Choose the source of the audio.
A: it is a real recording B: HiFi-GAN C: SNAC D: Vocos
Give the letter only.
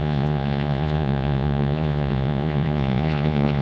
D